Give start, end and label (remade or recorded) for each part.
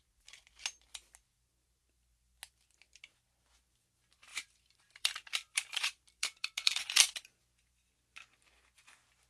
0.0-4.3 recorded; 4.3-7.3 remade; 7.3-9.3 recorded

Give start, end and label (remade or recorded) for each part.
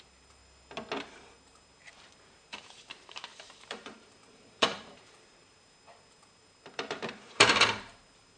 0.0-0.4 remade; 0.4-1.0 recorded; 1.0-8.4 remade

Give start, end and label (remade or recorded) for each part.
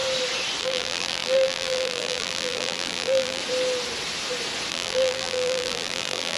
0.0-0.6 recorded; 0.6-3.4 remade; 3.4-4.7 recorded; 4.7-6.4 remade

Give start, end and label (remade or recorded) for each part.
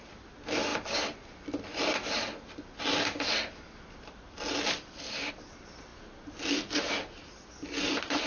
0.0-0.7 recorded; 0.7-5.3 remade; 5.3-8.3 recorded